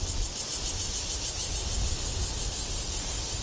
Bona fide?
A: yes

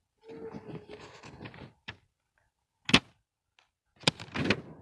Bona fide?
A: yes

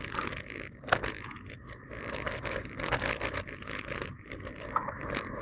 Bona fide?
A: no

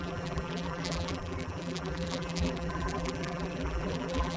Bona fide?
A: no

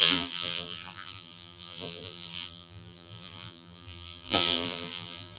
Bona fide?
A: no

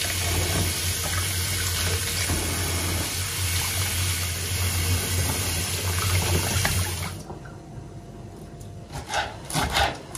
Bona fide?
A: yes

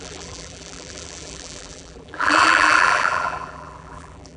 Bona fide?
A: no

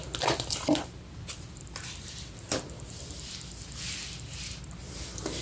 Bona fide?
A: no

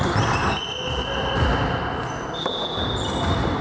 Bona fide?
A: yes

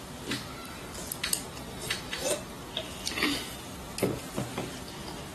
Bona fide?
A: yes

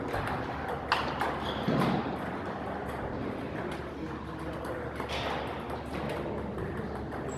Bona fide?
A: yes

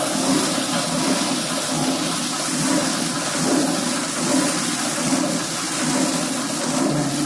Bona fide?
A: yes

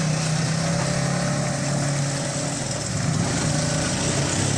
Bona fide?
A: yes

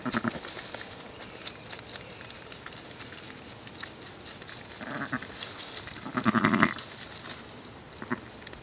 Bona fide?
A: yes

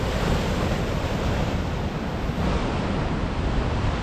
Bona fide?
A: no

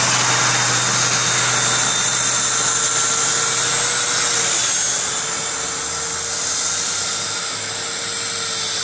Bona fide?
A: yes